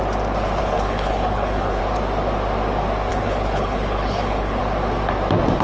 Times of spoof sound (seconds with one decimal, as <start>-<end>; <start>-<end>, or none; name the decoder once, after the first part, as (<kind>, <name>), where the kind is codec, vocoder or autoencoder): 0.6-1.8 (codec, HILCodec); 3.1-4.6